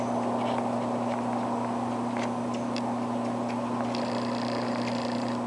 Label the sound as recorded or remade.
recorded